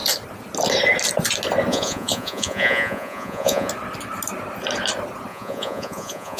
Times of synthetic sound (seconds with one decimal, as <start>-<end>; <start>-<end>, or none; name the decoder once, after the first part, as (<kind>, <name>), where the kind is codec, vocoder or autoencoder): 1.7-3.7 (vocoder, Vocos); 5.3-6.4